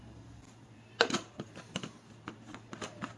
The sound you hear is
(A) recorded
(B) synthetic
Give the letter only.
B